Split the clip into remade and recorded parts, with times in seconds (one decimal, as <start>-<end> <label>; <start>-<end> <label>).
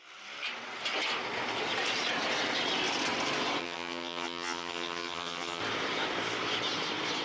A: 0.0-3.6 recorded; 3.6-5.6 remade; 5.6-7.2 recorded